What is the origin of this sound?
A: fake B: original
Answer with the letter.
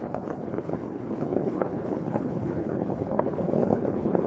A